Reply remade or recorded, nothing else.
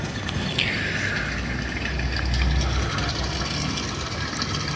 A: recorded